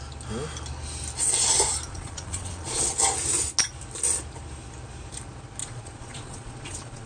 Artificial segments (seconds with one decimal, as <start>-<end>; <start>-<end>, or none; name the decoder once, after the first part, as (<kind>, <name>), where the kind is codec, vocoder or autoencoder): 1.9-2.8 (vocoder, Vocos); 5.6-7.1